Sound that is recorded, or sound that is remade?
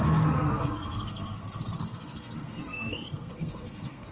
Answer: remade